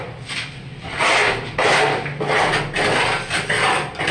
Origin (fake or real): real